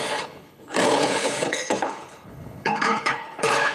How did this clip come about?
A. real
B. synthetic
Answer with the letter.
B